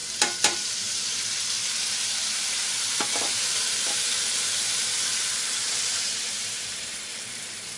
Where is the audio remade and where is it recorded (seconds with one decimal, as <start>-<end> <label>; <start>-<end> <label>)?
0.0-7.8 remade